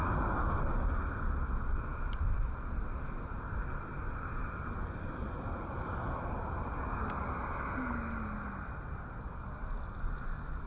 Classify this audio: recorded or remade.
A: recorded